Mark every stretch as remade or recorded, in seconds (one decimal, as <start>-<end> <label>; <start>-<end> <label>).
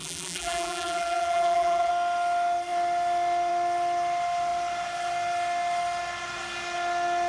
0.0-1.9 remade; 1.9-7.3 recorded